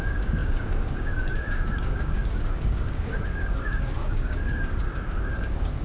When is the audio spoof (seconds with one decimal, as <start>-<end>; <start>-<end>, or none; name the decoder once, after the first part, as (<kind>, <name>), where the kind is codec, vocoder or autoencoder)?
0.0-5.8 (codec, DAC)